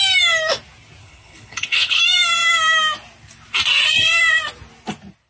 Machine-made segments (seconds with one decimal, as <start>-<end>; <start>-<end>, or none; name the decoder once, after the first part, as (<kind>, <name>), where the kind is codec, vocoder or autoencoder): 1.0-2.0 (codec, HILCodec)